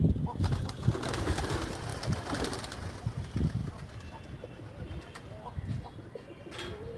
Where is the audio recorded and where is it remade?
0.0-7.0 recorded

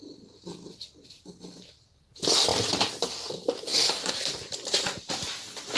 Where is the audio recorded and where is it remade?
0.0-3.7 recorded; 3.7-5.1 remade; 5.1-5.8 recorded

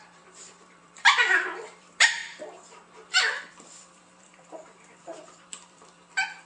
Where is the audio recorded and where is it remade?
0.0-2.2 remade; 2.2-2.9 recorded; 2.9-6.5 remade

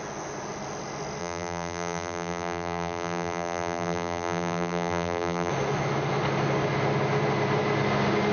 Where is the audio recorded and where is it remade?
0.0-1.2 recorded; 1.2-5.5 remade; 5.5-8.3 recorded